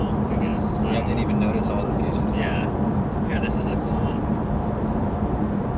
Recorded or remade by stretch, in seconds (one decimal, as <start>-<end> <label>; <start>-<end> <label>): 0.0-0.5 remade; 0.5-2.1 recorded; 2.1-5.8 remade